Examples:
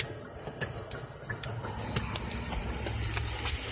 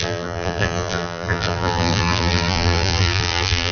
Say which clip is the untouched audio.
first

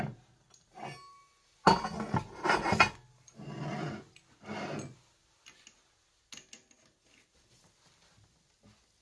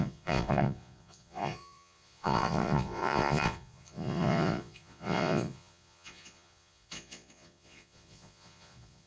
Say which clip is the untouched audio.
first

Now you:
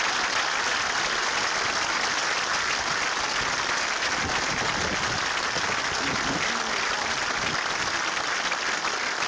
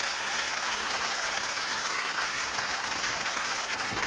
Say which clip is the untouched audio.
first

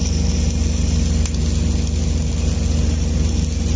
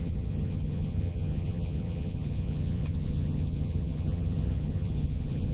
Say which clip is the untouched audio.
first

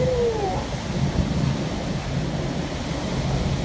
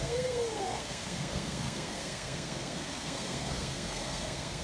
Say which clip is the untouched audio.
first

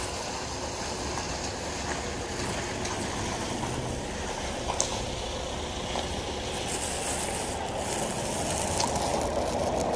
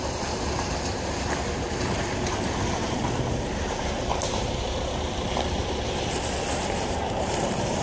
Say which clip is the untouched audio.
first